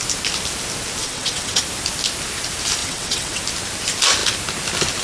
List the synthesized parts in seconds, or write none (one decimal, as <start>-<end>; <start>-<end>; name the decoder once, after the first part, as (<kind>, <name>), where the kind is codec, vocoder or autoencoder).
1.0-1.6 (vocoder, WaveNeXt); 2.8-3.4